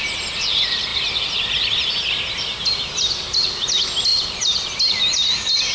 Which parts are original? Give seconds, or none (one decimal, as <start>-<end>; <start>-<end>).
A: 0.0-5.7

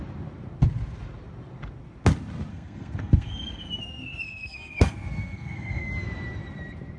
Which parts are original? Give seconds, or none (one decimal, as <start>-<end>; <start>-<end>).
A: 0.0-2.5; 5.9-7.0

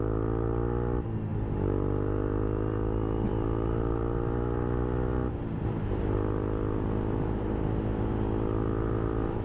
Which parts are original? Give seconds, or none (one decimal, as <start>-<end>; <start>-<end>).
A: 0.0-9.4

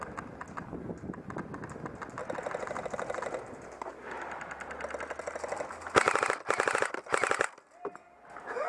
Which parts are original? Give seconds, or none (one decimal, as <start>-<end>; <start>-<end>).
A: 0.0-8.7

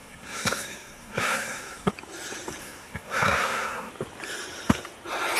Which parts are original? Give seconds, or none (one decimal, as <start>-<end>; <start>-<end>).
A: 1.9-2.6; 3.9-5.4

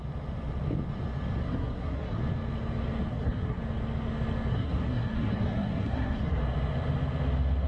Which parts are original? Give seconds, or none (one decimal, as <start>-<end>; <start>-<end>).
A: 0.0-1.4; 2.2-3.1; 3.6-4.5; 6.4-7.7